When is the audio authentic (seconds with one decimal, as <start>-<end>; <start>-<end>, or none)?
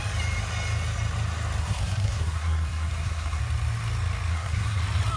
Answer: 0.0-1.6; 3.4-4.3; 4.8-5.2